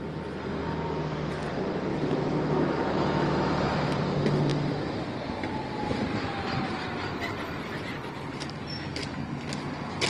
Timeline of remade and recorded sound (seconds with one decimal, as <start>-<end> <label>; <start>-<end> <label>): 0.0-1.9 recorded; 1.9-3.7 remade; 3.7-10.1 recorded